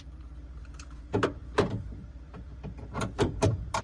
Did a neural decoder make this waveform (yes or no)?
yes